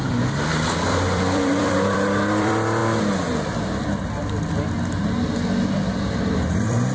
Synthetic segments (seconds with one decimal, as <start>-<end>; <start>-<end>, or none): 0.0-2.8; 6.0-6.9